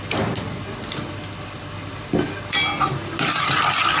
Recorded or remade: recorded